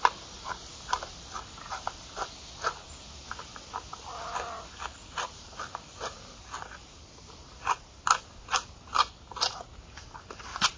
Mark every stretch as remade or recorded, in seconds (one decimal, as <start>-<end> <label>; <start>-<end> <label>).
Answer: 0.0-10.8 recorded